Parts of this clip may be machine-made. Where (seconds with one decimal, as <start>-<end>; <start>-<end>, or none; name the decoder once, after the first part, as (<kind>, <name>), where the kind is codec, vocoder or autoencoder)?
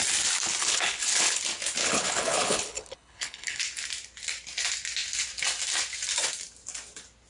0.6-1.4 (codec, HILCodec); 1.8-3.6